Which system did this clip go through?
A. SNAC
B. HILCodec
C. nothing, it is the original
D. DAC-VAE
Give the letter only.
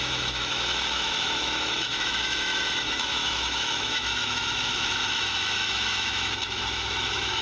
D